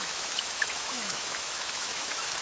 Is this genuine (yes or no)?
no